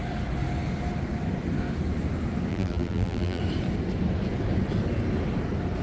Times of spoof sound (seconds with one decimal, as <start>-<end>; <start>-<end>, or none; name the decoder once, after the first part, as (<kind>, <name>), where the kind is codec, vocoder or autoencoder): 2.5-3.4 (vocoder, BigVGAN v2)